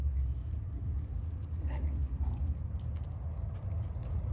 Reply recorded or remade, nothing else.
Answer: recorded